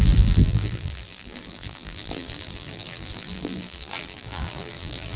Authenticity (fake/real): fake